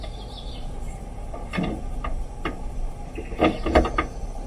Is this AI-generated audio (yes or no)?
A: no